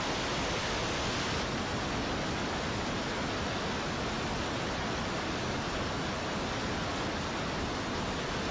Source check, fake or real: real